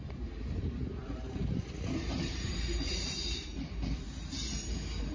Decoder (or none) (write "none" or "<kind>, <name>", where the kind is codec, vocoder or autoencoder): vocoder, BigVGAN v2